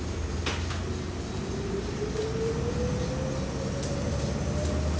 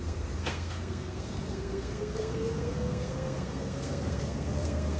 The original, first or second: first